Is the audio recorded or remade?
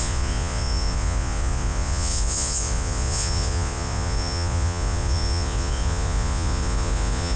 remade